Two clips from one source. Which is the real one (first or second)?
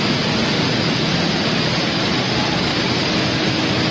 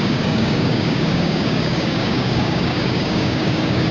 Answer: first